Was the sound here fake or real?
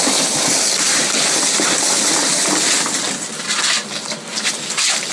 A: real